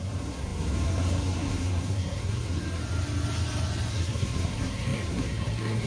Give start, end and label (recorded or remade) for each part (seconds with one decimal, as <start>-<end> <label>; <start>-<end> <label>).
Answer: 0.0-2.8 remade; 2.8-3.9 recorded; 3.9-5.9 remade